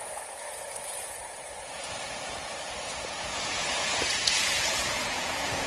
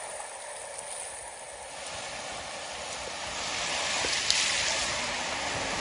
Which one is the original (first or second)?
second